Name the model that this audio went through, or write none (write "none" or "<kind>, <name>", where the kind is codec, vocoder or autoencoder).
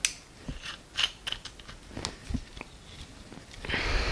none